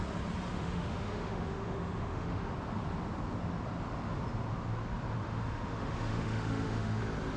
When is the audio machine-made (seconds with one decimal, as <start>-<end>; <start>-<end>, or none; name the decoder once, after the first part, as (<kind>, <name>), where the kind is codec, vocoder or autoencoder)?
0.5-2.5 (autoencoder, DAC-VAE); 5.2-7.0